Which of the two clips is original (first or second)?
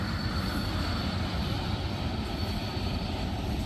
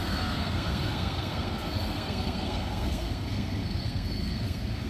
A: first